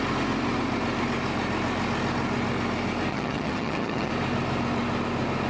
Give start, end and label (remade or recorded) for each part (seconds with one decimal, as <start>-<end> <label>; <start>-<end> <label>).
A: 0.0-3.1 recorded; 3.1-4.1 remade; 4.1-5.5 recorded